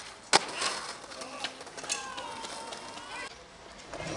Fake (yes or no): no